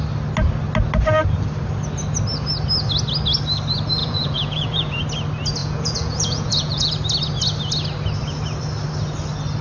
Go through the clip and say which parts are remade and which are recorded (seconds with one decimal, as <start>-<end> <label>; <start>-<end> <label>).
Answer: 0.0-4.0 recorded; 4.0-5.0 remade; 5.0-5.6 recorded; 5.6-6.9 remade; 6.9-9.6 recorded